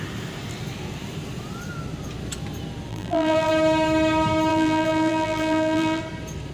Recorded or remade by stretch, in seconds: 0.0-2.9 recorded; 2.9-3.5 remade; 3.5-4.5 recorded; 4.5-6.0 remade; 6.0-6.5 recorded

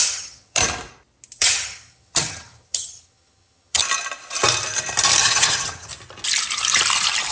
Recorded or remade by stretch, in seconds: 0.0-0.6 remade; 0.6-1.4 recorded; 1.4-3.8 remade; 3.8-5.2 recorded; 5.2-5.9 remade; 5.9-7.3 recorded